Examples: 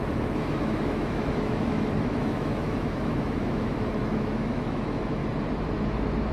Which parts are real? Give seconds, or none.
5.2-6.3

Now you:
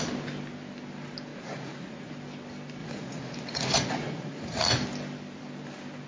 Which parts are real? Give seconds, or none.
0.0-1.3; 2.1-2.8; 4.6-6.1

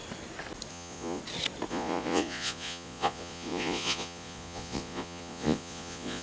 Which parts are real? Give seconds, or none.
0.0-0.7; 1.2-1.7